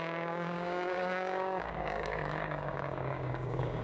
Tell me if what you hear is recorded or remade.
remade